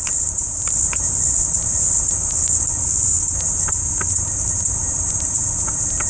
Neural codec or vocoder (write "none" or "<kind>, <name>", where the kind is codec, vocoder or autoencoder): vocoder, BigVGAN v2